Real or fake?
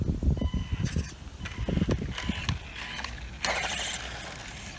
real